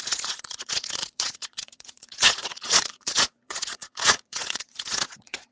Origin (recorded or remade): remade